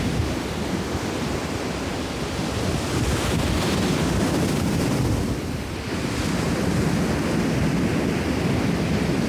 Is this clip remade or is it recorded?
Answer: recorded